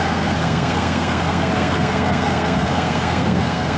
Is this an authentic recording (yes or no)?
no